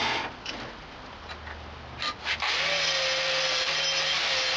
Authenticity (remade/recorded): recorded